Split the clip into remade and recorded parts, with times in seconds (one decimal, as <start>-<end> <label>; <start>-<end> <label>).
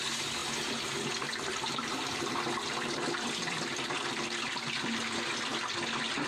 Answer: 0.0-0.4 recorded; 0.4-4.2 remade; 4.2-6.3 recorded